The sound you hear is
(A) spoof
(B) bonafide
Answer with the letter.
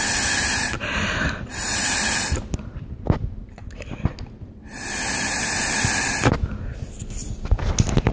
B